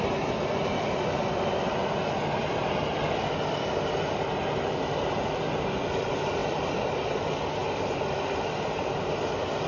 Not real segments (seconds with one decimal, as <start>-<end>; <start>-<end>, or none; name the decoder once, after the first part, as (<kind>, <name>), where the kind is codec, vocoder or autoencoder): none

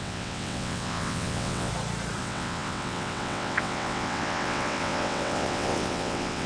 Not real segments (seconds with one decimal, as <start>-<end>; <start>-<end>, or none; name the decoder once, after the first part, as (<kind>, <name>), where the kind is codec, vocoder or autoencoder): 0.0-1.7 (vocoder, WaveNeXt); 2.2-6.5

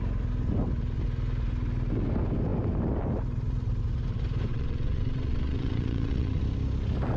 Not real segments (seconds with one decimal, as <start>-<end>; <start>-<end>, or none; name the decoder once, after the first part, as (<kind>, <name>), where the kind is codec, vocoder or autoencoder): 4.5-6.4 (vocoder, WaveNeXt)